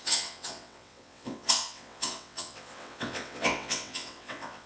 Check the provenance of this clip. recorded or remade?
remade